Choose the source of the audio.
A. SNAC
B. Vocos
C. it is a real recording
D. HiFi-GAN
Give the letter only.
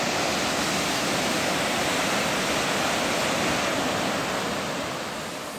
C